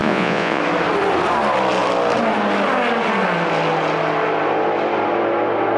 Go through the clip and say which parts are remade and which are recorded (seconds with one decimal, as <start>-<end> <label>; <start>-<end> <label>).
0.0-0.6 remade; 0.6-5.8 recorded

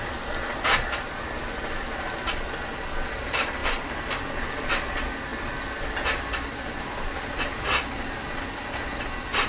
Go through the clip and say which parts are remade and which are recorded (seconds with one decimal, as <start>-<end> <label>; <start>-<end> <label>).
0.0-9.5 recorded

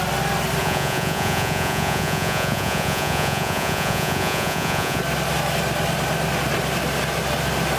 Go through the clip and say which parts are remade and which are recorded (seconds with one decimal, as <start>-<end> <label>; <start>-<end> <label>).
0.0-0.6 recorded; 0.6-5.0 remade; 5.0-7.8 recorded

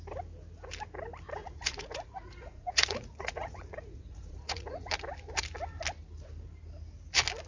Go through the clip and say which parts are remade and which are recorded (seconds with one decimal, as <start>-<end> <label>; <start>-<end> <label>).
0.0-1.4 recorded; 1.4-4.9 remade; 4.9-7.5 recorded

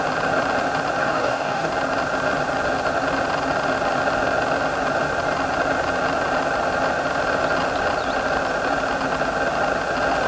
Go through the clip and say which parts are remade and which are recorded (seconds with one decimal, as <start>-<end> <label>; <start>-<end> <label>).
0.0-1.0 recorded; 1.0-1.7 remade; 1.7-10.3 recorded

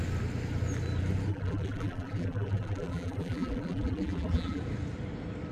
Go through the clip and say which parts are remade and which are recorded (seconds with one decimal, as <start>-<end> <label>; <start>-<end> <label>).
0.0-1.3 recorded; 1.3-4.6 remade; 4.6-5.5 recorded

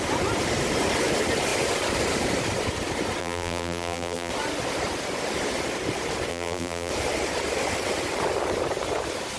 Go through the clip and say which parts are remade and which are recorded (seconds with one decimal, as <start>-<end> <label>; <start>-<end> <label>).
0.0-3.2 recorded; 3.2-4.3 remade; 4.3-6.3 recorded; 6.3-6.9 remade; 6.9-9.4 recorded

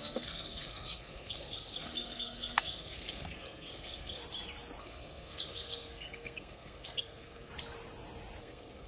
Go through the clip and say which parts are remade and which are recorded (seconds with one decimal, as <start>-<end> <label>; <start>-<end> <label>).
0.0-4.2 remade; 4.2-4.8 recorded; 4.8-7.5 remade; 7.5-8.4 recorded; 8.4-8.9 remade